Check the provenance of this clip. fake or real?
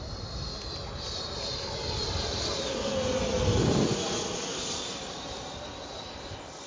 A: real